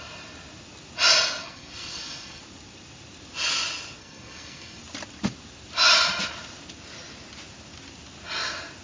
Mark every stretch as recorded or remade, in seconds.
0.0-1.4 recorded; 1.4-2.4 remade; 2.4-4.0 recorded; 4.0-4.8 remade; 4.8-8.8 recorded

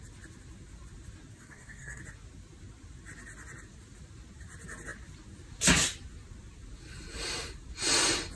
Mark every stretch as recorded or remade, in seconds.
0.0-1.3 recorded; 1.3-2.0 remade; 2.0-8.4 recorded

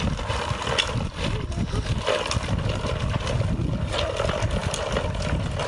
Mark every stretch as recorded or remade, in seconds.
0.0-5.7 recorded

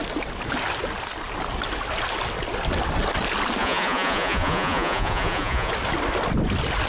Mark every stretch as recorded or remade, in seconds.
0.0-3.6 recorded; 3.6-5.7 remade; 5.7-6.9 recorded

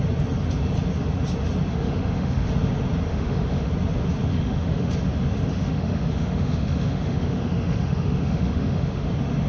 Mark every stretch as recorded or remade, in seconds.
0.0-1.7 recorded; 1.7-2.5 remade; 2.5-3.1 recorded; 3.1-3.7 remade; 3.7-4.3 recorded; 4.3-4.9 remade; 4.9-5.5 recorded; 5.5-9.1 remade; 9.1-9.5 recorded

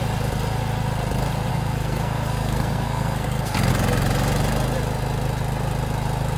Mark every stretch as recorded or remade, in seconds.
0.0-1.5 recorded; 1.5-3.7 remade; 3.7-6.4 recorded

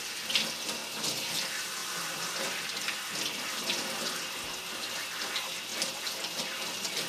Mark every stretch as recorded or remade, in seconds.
0.0-0.8 remade; 0.8-1.3 recorded; 1.3-5.7 remade; 5.7-6.4 recorded; 6.4-7.1 remade

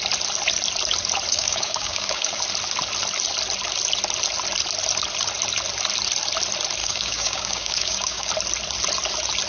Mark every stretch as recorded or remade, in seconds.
0.0-1.3 recorded; 1.3-2.4 remade; 2.4-6.8 recorded; 6.8-8.3 remade; 8.3-9.5 recorded